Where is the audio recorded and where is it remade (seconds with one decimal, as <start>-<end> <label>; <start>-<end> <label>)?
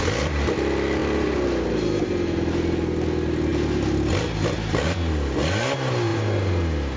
0.0-7.0 recorded